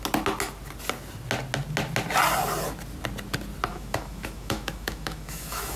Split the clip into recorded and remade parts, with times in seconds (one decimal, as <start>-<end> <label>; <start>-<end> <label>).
0.0-3.7 recorded; 3.7-5.8 remade